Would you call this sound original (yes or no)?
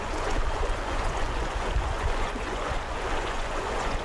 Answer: no